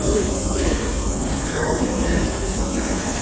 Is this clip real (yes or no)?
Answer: no